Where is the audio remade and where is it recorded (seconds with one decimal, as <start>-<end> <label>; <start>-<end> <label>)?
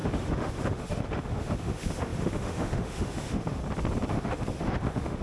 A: 0.0-3.6 remade; 3.6-4.1 recorded; 4.1-5.2 remade